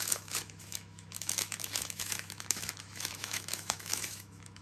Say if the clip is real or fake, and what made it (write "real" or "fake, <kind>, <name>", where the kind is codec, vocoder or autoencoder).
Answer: fake, autoencoder, DAC-VAE